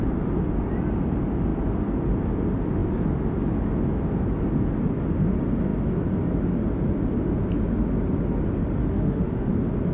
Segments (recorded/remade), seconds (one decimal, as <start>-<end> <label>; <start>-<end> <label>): 0.0-8.8 recorded; 8.8-9.5 remade; 9.5-9.9 recorded

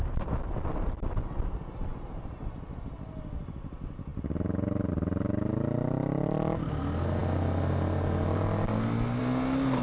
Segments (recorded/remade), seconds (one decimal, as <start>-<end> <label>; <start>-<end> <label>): 0.0-9.8 recorded

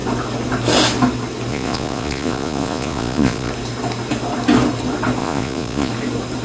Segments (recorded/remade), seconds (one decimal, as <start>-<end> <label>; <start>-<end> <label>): 0.0-1.5 recorded; 1.5-3.5 remade; 3.5-5.2 recorded; 5.2-5.9 remade; 5.9-6.4 recorded